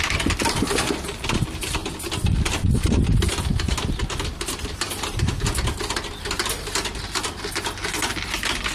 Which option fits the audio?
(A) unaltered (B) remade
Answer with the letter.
A